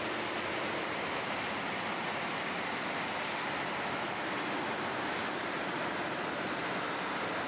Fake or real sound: real